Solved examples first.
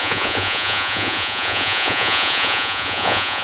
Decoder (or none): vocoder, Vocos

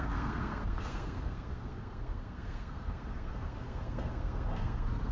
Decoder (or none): codec, SNAC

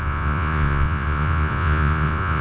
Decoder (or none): vocoder, Vocos